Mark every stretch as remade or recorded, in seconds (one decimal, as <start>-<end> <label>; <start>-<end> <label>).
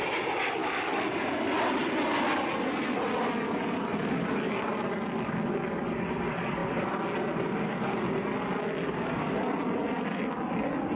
0.0-0.6 recorded; 0.6-1.1 remade; 1.1-11.0 recorded